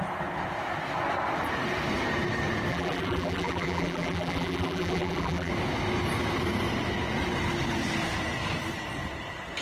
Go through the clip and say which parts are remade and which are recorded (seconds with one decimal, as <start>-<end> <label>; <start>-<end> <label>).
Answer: 0.0-2.7 recorded; 2.7-5.5 remade; 5.5-9.6 recorded